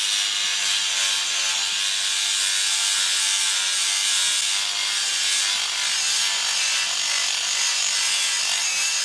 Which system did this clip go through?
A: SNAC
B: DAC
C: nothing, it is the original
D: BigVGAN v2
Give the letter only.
C